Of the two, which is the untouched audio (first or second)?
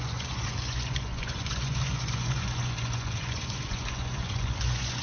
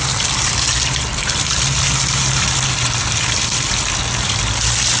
second